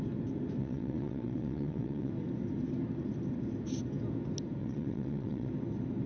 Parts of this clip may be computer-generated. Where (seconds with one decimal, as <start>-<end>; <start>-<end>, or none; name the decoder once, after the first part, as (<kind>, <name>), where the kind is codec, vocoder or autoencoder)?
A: 0.6-2.1 (vocoder, WaveNeXt); 4.6-5.5